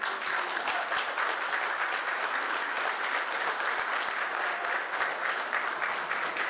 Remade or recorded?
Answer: recorded